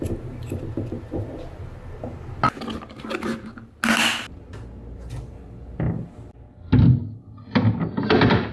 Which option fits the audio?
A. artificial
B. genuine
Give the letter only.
B